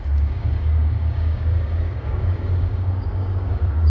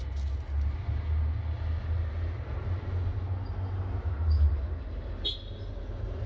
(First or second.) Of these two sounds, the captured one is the second